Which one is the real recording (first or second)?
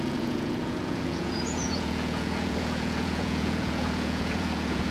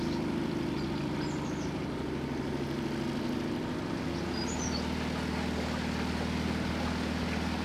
second